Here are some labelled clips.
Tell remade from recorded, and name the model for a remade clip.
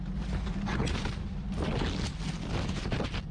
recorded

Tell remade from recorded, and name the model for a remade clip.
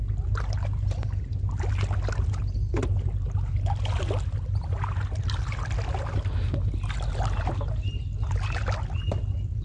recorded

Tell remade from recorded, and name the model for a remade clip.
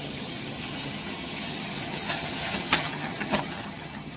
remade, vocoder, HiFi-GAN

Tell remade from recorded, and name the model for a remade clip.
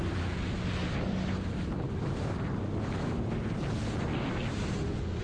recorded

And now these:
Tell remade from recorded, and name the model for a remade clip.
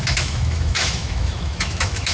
remade, autoencoder, DAC-VAE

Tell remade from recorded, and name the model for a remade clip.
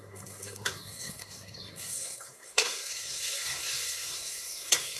remade, codec, SNAC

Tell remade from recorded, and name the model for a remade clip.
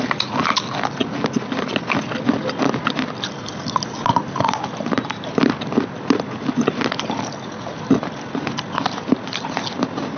recorded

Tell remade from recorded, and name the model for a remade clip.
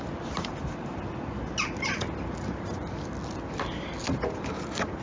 recorded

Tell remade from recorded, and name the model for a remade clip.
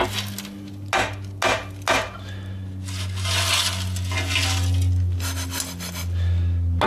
recorded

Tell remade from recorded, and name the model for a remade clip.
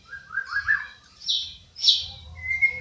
remade, vocoder, BigVGAN v2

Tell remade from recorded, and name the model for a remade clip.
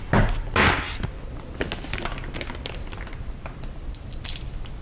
recorded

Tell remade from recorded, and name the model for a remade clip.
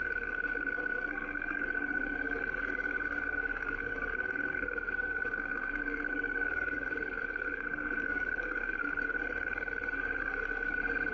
remade, codec, SNAC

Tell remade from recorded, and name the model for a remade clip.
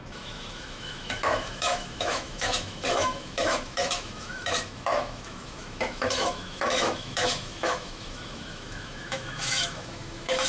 remade, autoencoder, DAC-VAE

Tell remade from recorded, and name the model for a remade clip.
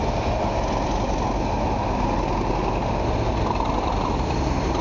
recorded